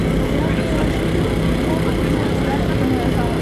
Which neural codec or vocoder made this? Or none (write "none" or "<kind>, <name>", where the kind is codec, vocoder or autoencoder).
none